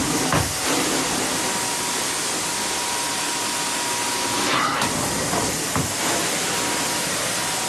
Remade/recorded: recorded